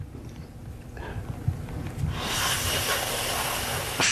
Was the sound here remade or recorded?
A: recorded